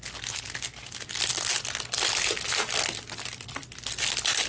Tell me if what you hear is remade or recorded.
recorded